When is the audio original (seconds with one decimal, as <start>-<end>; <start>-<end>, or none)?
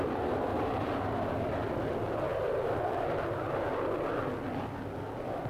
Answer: 0.0-0.5; 1.0-5.5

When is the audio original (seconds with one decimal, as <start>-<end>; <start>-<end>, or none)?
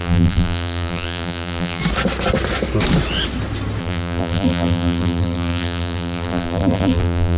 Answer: 1.8-3.8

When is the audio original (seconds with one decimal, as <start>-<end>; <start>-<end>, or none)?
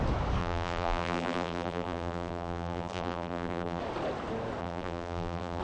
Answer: 0.0-0.4; 3.8-4.6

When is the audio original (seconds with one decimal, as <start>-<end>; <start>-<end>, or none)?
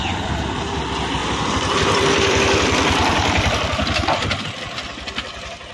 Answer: 0.0-1.2; 4.4-5.7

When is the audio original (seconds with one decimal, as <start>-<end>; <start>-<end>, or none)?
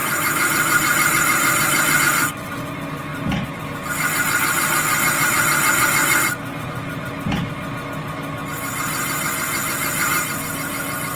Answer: 2.0-11.2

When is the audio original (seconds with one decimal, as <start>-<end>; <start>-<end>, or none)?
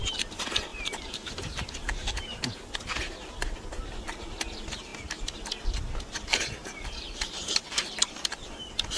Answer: 0.0-0.7; 2.4-6.6; 8.3-9.0